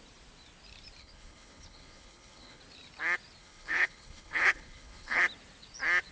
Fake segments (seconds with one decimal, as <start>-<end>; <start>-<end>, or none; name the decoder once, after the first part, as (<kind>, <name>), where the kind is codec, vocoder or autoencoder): 1.0-2.6 (codec, HILCodec); 3.4-5.2